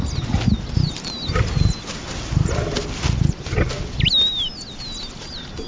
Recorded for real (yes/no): yes